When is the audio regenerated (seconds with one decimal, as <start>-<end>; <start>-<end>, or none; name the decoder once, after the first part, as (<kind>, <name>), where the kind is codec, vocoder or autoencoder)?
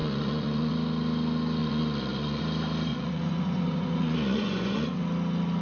0.0-0.7 (vocoder, Vocos); 1.6-2.4; 2.9-5.0